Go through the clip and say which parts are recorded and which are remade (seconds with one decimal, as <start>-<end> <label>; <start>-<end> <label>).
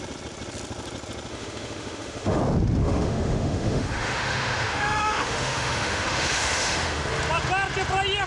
0.0-1.3 recorded; 1.3-2.4 remade; 2.4-2.8 recorded; 2.8-7.0 remade; 7.0-8.3 recorded